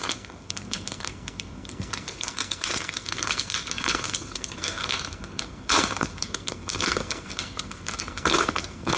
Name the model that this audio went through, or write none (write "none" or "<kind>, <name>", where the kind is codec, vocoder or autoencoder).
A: codec, SNAC